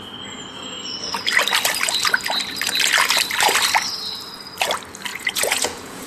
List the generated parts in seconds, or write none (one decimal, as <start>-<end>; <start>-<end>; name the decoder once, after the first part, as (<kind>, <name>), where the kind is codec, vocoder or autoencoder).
5.1-6.1 (vocoder, Vocos)